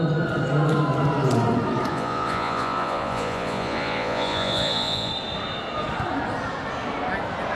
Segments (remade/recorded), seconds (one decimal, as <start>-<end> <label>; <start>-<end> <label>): 0.0-1.9 recorded; 1.9-5.1 remade; 5.1-7.5 recorded